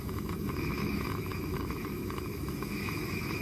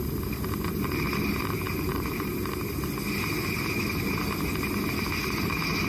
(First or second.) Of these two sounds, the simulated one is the first